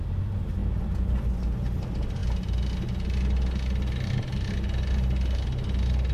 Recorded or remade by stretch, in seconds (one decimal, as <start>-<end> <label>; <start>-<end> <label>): 0.0-6.1 recorded